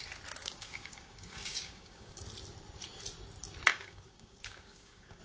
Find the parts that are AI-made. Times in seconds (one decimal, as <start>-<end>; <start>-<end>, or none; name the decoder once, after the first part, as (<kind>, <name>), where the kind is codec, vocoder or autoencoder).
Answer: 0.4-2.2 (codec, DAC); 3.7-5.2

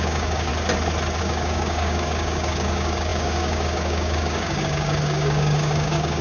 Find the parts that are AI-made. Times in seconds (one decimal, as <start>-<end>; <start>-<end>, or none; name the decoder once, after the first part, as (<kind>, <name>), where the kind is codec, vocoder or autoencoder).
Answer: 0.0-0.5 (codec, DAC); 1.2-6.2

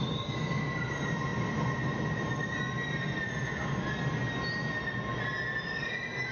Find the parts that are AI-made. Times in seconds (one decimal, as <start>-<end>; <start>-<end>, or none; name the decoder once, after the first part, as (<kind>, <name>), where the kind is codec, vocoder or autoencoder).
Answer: none

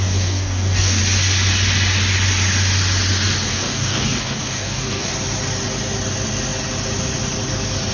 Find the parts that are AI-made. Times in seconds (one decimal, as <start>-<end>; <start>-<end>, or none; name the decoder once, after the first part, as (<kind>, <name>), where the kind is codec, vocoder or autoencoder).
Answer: 0.0-1.0 (codec, DAC); 3.5-5.1

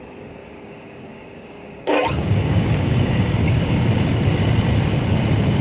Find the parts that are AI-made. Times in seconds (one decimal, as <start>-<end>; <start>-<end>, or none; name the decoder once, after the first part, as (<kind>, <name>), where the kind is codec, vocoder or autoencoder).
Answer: 0.4-3.8 (codec, DAC)